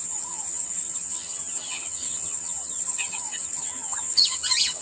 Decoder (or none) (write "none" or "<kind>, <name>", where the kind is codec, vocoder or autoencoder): vocoder, HiFi-GAN